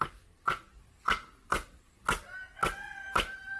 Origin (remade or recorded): recorded